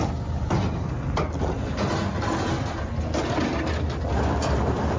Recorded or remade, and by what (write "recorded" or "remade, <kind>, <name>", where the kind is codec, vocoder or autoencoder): recorded